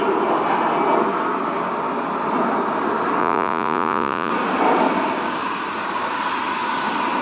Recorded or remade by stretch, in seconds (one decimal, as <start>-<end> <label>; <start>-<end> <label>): 0.0-3.2 recorded; 3.2-4.3 remade; 4.3-7.2 recorded